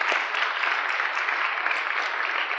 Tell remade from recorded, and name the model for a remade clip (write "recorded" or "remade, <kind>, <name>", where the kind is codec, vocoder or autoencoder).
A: recorded